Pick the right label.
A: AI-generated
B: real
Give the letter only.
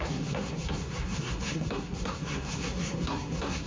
A